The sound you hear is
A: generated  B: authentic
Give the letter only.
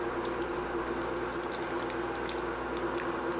B